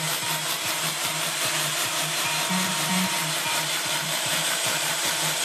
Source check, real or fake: fake